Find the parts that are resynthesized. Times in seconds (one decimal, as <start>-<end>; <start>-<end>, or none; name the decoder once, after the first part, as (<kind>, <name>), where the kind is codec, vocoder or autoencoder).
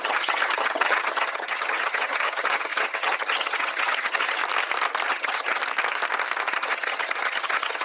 0.0-4.4 (vocoder, HiFi-GAN); 5.1-5.6; 6.5-7.8